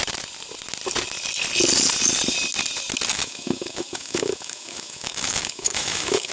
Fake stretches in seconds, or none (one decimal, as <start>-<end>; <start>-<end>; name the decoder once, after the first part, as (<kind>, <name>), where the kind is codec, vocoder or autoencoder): 3.1-6.3 (autoencoder, DAC-VAE)